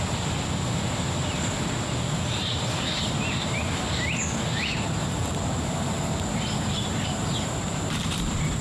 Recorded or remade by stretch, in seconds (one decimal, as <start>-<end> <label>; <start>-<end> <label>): 0.0-2.4 recorded; 2.4-3.1 remade; 3.1-5.0 recorded; 5.0-8.6 remade